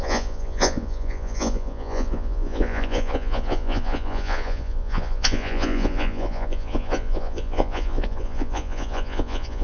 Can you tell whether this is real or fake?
fake